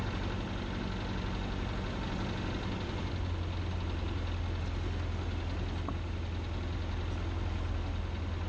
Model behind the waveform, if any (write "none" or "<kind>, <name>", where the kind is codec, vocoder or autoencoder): none